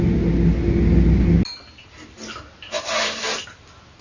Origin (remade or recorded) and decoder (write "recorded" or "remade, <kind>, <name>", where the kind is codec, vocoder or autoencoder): recorded